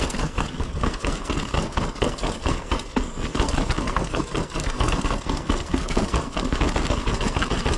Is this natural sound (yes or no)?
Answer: no